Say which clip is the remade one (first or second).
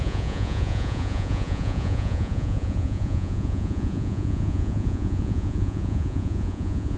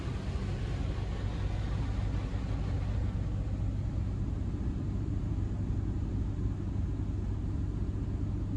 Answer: first